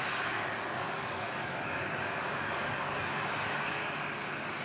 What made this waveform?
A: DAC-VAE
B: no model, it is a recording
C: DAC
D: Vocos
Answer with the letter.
C